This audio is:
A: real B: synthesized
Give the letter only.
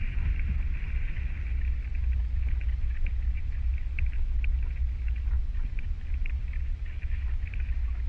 A